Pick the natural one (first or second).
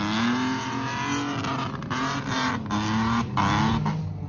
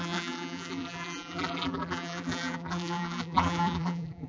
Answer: first